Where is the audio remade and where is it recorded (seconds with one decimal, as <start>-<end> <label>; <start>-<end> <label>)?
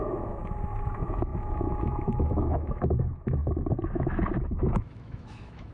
0.0-0.4 remade; 0.4-0.9 recorded; 0.9-3.4 remade; 3.4-4.4 recorded; 4.4-5.7 remade